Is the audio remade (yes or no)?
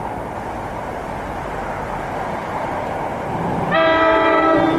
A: yes